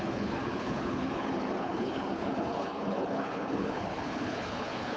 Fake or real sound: fake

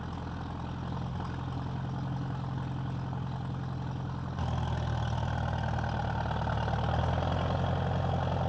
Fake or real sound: real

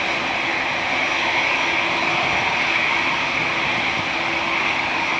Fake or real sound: real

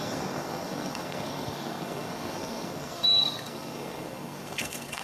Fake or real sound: fake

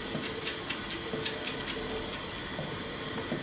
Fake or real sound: real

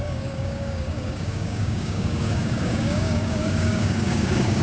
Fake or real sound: fake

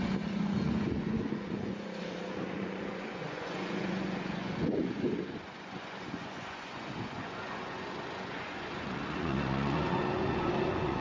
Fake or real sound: fake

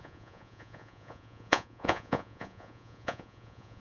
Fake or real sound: fake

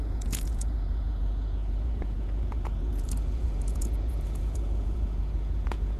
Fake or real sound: fake